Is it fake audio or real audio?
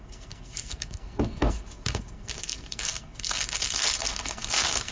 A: fake